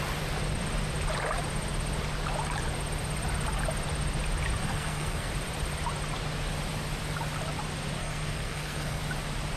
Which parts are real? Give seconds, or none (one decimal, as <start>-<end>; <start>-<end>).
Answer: 0.0-4.6; 5.3-8.0; 9.0-9.6